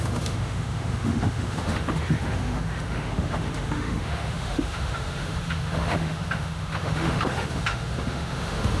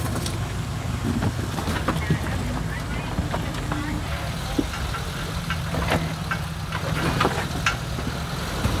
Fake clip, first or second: first